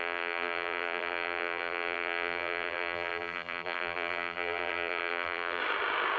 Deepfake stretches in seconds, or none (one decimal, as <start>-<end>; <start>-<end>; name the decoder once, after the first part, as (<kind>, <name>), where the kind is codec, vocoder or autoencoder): 0.0-5.6 (vocoder, BigVGAN v2)